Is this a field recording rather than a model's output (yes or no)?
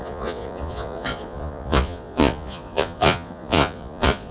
no